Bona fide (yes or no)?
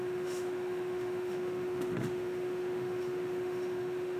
no